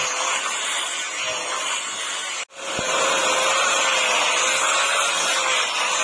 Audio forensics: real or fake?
real